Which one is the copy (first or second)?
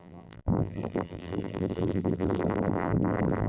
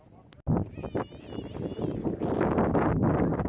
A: first